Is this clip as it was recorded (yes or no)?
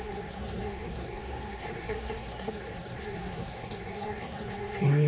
no